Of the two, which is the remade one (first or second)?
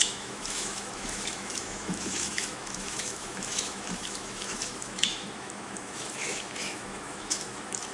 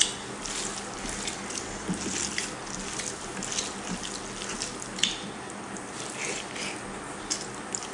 first